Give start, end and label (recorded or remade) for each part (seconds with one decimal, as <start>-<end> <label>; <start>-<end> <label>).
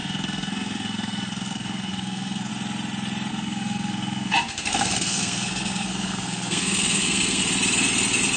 0.0-2.5 remade; 2.5-3.3 recorded; 3.3-7.4 remade; 7.4-8.4 recorded